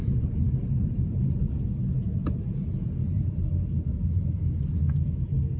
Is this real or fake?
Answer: fake